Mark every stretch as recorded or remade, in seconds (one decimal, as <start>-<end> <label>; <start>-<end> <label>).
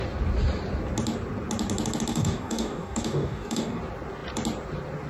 0.0-2.1 recorded; 2.1-3.8 remade; 3.8-5.1 recorded